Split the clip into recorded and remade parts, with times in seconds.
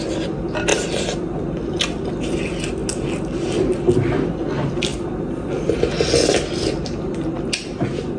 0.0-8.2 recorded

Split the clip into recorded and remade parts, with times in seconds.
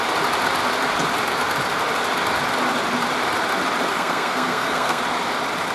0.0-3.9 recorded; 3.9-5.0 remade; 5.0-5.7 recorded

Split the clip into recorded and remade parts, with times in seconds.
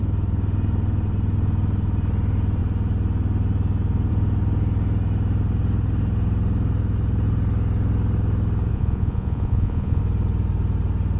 0.0-8.7 recorded; 8.7-10.0 remade; 10.0-11.2 recorded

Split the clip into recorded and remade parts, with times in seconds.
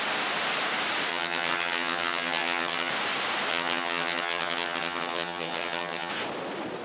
0.0-1.1 recorded; 1.1-2.9 remade; 2.9-3.5 recorded; 3.5-6.1 remade; 6.1-6.8 recorded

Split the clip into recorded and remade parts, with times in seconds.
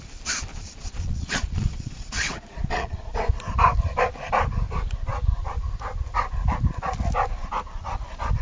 0.0-0.5 recorded; 0.5-3.0 remade; 3.0-8.4 recorded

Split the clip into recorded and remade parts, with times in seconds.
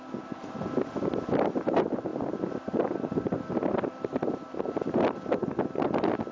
0.0-6.3 recorded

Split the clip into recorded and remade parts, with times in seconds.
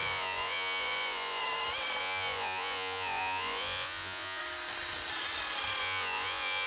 0.0-1.4 remade; 1.4-2.0 recorded; 2.0-4.4 remade; 4.4-5.8 recorded; 5.8-6.7 remade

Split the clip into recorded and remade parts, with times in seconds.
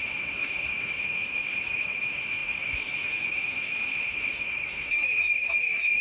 0.0-6.0 remade